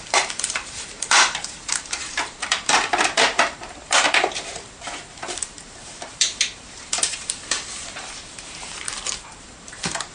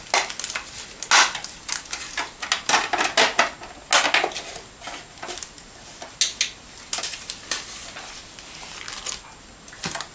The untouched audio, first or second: second